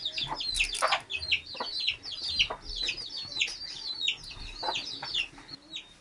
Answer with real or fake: real